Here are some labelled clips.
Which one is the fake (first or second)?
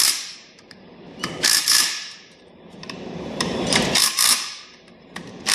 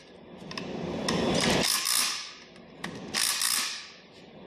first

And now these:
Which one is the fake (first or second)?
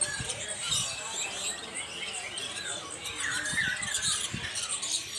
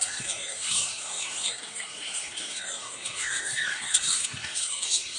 second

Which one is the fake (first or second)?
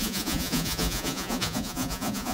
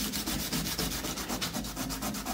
first